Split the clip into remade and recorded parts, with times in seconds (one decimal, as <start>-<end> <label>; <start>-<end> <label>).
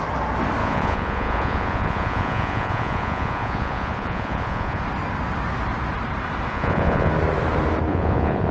0.0-0.6 recorded; 0.6-4.8 remade; 4.8-6.5 recorded; 6.5-7.1 remade; 7.1-7.9 recorded; 7.9-8.5 remade